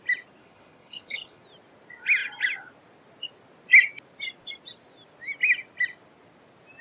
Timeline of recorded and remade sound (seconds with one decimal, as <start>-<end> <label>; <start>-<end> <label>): 0.0-0.4 recorded; 0.4-1.4 remade; 1.4-6.8 recorded